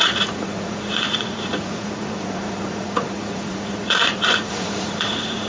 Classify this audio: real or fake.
fake